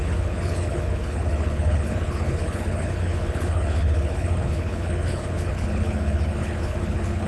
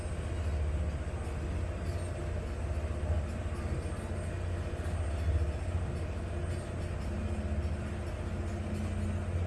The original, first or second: second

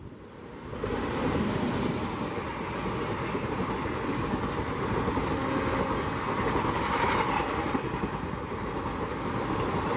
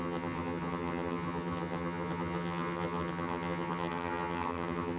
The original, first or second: first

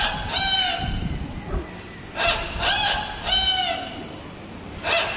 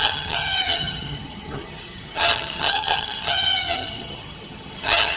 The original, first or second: first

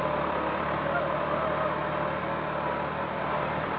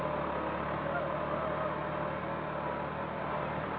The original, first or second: second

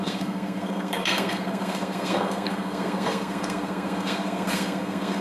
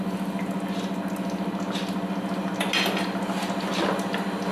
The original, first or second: second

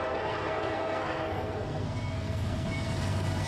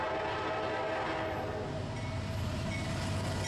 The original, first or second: second